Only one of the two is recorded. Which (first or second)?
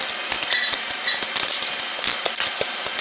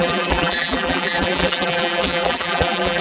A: first